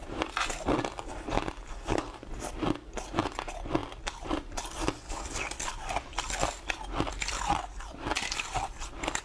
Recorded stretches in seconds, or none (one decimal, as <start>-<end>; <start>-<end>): none